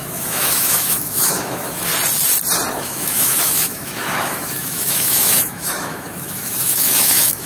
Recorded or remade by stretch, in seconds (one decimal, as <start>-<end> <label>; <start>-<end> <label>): 0.0-1.9 remade; 1.9-2.7 recorded; 2.7-7.5 remade

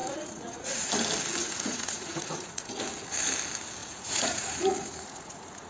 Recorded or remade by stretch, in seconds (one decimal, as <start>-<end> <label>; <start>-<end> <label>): 0.0-0.9 remade; 0.9-1.4 recorded; 1.4-2.7 remade; 2.7-3.8 recorded; 3.8-5.7 remade

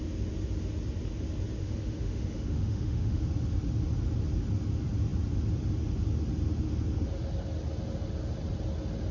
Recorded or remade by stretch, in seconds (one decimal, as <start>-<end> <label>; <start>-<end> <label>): 0.0-1.6 recorded; 1.6-3.2 remade; 3.2-9.1 recorded